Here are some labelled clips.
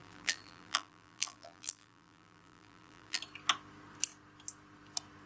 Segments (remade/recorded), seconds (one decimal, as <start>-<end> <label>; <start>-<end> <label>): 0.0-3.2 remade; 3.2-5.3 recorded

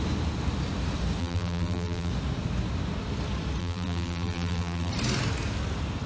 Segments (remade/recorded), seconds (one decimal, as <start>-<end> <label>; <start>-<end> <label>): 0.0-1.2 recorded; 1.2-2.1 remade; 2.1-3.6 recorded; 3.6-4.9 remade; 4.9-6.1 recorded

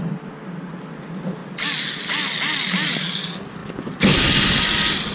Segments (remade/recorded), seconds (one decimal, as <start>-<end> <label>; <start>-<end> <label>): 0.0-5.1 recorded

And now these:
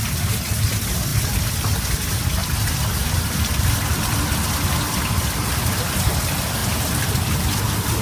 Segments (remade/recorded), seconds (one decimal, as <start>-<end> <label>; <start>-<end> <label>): 0.0-6.6 recorded; 6.6-7.6 remade; 7.6-8.0 recorded

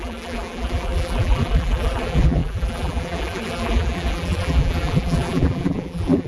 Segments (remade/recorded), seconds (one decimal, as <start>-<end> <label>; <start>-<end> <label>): 0.0-6.3 remade

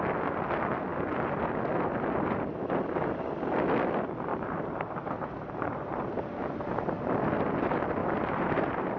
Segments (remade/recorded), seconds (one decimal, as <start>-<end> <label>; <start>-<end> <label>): 0.0-4.3 recorded; 4.3-6.6 remade; 6.6-8.0 recorded; 8.0-9.0 remade

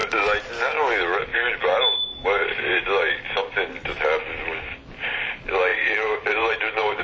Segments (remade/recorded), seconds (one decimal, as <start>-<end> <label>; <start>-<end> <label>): 0.0-5.7 recorded; 5.7-7.0 remade